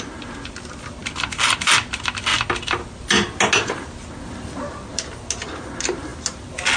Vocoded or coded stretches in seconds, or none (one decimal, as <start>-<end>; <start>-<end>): none